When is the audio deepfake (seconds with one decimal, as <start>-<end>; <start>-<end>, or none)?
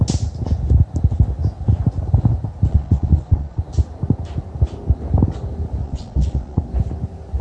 2.7-3.6; 5.8-6.6